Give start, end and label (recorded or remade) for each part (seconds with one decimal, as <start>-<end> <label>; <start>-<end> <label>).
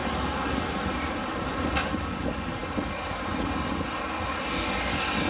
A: 0.0-5.3 recorded